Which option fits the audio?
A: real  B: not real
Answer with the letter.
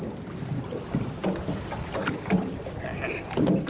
A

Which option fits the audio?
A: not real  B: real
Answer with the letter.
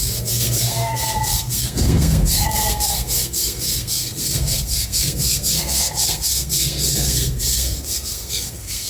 A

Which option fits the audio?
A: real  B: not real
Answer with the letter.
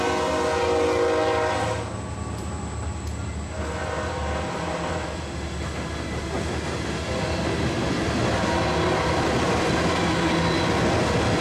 A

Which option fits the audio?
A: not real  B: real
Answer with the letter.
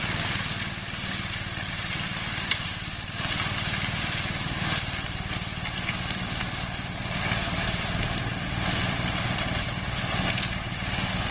B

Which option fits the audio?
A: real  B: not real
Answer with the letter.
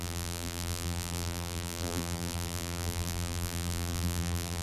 B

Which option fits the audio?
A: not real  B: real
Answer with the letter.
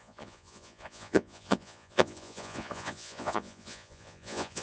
A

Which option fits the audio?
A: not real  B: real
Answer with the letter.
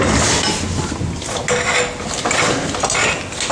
B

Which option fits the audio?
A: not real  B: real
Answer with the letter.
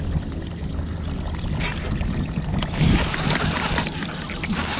B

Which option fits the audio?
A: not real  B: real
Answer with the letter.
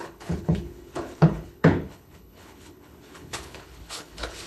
A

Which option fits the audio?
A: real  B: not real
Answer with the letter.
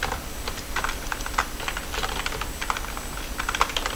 A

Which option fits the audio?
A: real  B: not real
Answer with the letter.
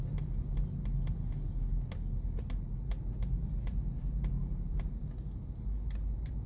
A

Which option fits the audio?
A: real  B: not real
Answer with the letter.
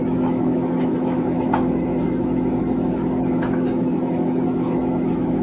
B